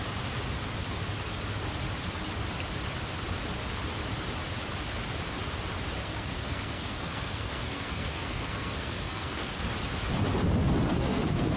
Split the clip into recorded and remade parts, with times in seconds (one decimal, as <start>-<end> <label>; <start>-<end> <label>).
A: 0.0-6.0 recorded; 6.0-9.5 remade; 9.5-10.9 recorded; 10.9-11.6 remade